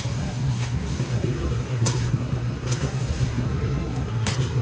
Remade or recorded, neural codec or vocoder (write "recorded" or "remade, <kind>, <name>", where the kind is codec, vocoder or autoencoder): remade, codec, SNAC